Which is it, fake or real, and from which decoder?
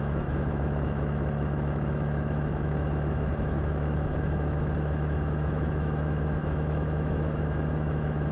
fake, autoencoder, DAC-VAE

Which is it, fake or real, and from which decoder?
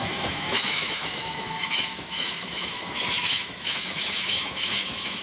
fake, autoencoder, DAC-VAE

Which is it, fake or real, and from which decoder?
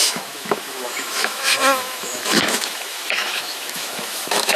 fake, autoencoder, DAC-VAE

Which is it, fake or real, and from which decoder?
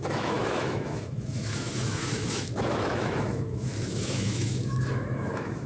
fake, autoencoder, DAC-VAE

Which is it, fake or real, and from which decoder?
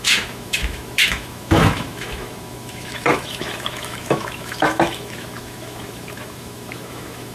fake, autoencoder, DAC-VAE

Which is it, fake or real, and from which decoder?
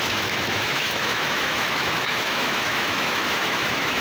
fake, autoencoder, DAC-VAE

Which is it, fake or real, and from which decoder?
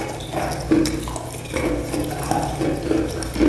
real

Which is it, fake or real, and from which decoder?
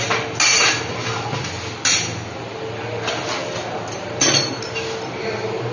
real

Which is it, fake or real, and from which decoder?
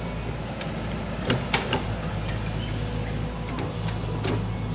real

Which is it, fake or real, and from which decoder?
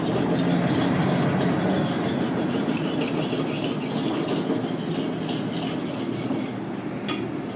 real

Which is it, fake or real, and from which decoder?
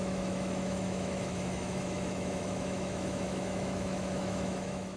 fake, autoencoder, DAC-VAE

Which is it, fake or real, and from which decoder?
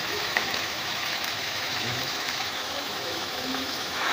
fake, autoencoder, DAC-VAE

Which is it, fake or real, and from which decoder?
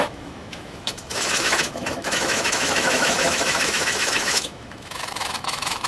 fake, autoencoder, DAC-VAE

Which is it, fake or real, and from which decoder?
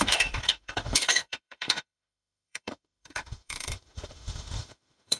fake, autoencoder, DAC-VAE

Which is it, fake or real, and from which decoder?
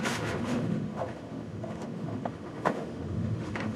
fake, autoencoder, DAC-VAE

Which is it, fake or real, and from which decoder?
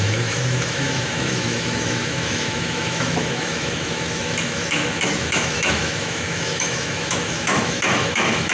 fake, autoencoder, DAC-VAE